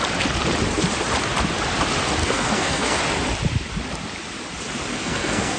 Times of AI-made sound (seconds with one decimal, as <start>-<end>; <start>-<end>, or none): 2.2-3.0; 4.9-5.6